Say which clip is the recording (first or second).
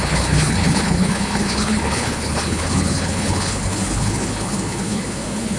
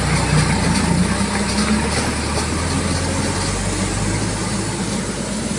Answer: second